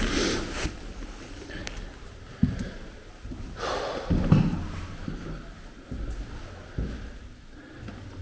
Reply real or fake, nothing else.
real